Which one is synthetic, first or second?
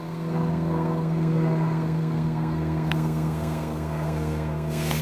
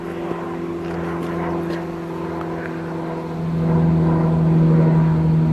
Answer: first